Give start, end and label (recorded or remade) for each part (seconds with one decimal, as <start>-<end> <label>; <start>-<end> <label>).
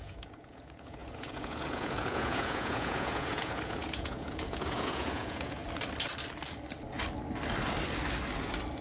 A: 0.0-5.6 remade; 5.6-8.8 recorded